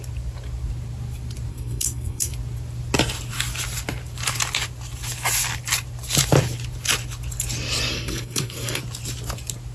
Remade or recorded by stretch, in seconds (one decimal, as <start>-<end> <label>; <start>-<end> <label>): 0.0-1.5 recorded; 1.5-2.3 remade; 2.3-7.9 recorded; 7.9-8.8 remade; 8.8-9.7 recorded